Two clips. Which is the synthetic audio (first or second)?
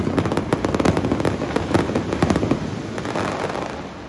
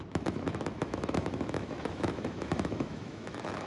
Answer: second